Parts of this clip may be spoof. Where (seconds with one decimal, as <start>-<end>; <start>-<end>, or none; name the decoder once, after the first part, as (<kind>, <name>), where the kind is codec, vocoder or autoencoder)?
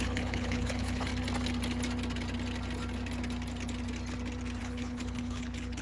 0.0-1.1 (codec, HILCodec); 4.6-5.8